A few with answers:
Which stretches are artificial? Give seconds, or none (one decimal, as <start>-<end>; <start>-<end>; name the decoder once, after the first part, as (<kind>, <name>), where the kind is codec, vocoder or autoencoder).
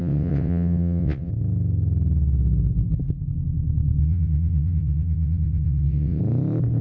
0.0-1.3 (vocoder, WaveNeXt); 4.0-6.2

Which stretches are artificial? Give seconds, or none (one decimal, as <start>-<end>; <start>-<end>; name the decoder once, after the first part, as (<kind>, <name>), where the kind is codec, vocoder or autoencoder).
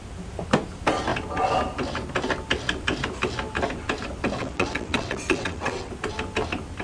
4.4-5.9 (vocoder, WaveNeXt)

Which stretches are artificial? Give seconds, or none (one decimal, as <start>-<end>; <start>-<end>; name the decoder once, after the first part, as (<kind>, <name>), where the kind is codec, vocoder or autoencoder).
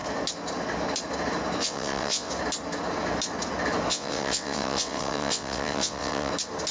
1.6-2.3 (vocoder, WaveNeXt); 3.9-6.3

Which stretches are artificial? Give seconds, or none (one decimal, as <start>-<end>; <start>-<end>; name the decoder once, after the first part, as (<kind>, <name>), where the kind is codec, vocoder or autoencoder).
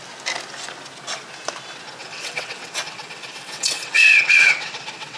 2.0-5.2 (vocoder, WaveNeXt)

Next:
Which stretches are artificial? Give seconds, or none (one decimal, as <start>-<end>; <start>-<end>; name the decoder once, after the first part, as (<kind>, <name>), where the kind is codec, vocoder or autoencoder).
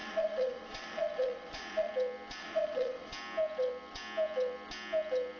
0.0-1.9 (vocoder, WaveNeXt); 2.4-3.1